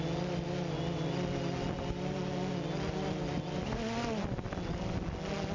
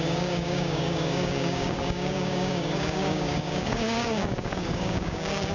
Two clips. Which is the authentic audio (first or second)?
first